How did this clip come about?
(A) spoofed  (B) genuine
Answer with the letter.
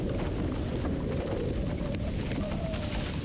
B